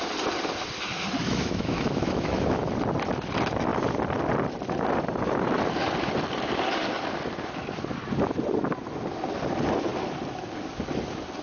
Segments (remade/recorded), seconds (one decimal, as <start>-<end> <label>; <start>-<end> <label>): 0.0-1.2 recorded; 1.2-2.6 remade; 2.6-11.4 recorded